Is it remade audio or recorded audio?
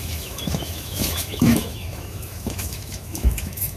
remade